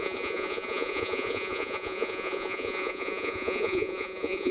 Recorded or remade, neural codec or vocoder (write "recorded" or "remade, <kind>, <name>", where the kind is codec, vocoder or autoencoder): remade, vocoder, Vocos